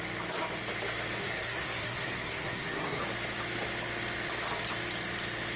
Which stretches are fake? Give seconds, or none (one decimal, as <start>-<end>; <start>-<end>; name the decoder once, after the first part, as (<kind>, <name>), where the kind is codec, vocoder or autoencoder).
1.2-3.0 (codec, SNAC)

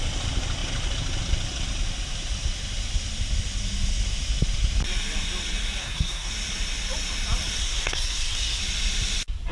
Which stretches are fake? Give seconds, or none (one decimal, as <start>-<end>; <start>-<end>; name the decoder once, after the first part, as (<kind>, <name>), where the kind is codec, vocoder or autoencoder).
5.8-6.3 (codec, SNAC); 7.6-8.6